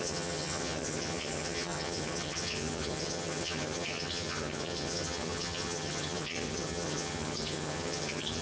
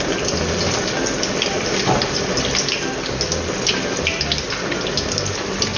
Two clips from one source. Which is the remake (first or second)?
first